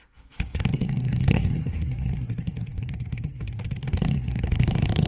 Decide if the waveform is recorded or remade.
remade